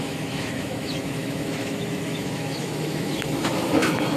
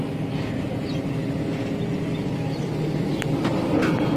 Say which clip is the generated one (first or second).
first